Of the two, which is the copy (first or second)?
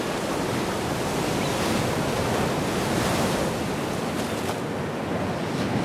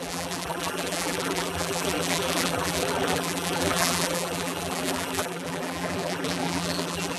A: second